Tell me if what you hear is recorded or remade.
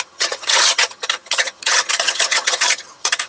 remade